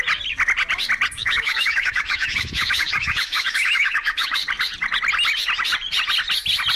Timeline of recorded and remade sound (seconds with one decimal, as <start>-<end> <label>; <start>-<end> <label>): 0.0-1.2 recorded; 1.2-4.4 remade; 4.4-6.8 recorded